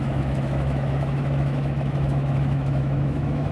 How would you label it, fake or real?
fake